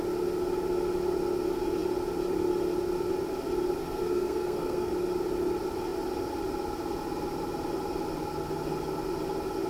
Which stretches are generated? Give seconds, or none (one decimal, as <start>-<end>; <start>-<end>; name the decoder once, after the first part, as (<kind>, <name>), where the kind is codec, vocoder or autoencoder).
3.8-4.9 (codec, SNAC)